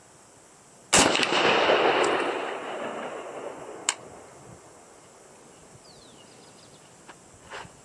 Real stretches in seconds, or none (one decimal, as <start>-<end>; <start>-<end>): 0.0-3.1; 3.8-7.1

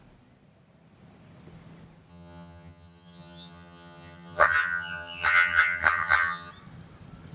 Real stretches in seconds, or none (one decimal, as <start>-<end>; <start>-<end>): 0.0-2.1; 6.5-7.3

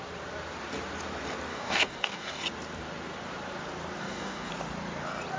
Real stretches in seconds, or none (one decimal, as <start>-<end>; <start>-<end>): 0.0-1.5; 2.4-4.0; 4.5-5.4

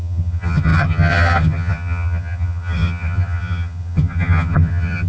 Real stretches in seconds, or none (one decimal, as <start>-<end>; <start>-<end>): none

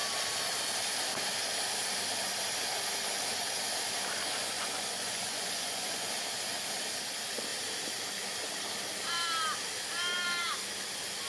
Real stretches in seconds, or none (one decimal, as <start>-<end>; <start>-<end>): 0.0-4.4; 6.1-11.3

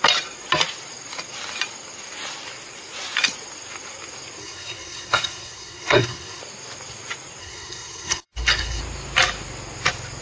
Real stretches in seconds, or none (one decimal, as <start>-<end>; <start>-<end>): 0.0-4.4; 6.4-7.4; 8.8-10.2

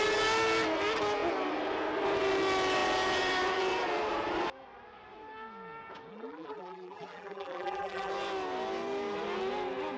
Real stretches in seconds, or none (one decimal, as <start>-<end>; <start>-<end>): 0.0-6.1; 8.1-10.0

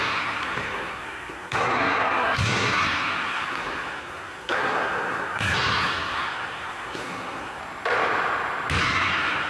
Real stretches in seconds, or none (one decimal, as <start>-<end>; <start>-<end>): 7.6-8.8